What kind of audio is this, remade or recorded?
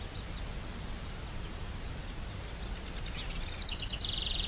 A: recorded